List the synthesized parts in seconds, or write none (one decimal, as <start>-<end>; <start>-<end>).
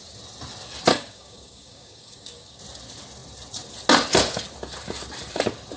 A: 0.9-2.6